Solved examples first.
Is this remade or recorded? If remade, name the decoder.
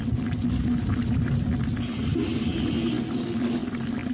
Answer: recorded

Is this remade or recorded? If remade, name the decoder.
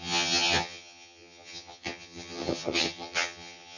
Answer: remade, vocoder, HiFi-GAN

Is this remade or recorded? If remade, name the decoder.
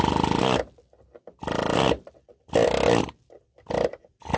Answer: recorded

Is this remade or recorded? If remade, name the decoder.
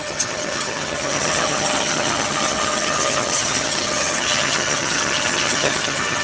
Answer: remade, vocoder, HiFi-GAN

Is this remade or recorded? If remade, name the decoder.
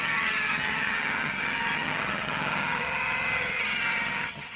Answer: remade, vocoder, HiFi-GAN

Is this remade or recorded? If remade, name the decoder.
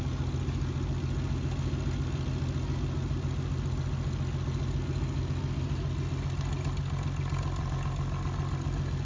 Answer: recorded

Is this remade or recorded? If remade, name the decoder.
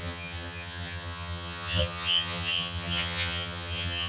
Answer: remade, vocoder, HiFi-GAN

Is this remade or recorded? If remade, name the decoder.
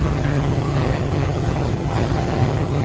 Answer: remade, vocoder, HiFi-GAN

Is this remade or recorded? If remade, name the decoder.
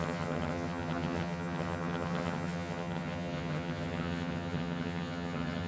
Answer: remade, vocoder, HiFi-GAN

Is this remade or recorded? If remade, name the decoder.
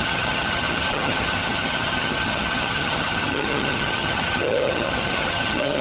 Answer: remade, vocoder, HiFi-GAN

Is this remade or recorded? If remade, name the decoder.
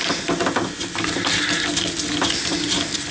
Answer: recorded